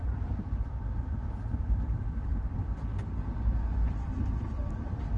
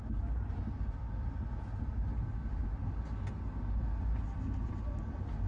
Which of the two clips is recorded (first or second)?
second